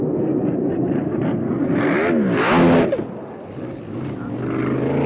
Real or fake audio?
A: real